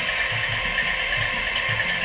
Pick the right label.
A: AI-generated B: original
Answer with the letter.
B